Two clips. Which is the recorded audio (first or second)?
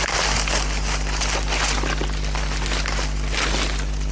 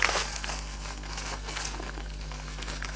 first